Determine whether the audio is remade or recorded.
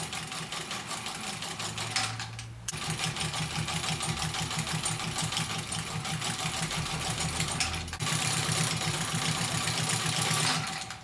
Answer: recorded